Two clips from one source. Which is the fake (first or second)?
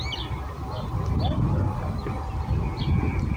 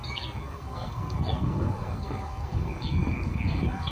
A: second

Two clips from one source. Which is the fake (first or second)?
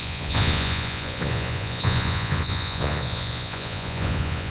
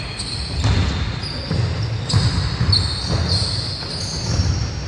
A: first